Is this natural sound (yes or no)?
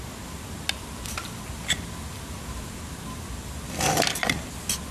yes